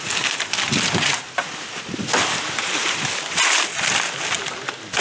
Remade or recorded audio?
recorded